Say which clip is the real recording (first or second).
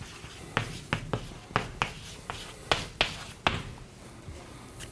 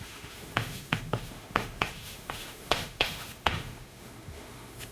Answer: first